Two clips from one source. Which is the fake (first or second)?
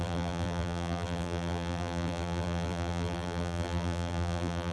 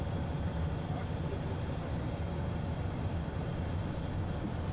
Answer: first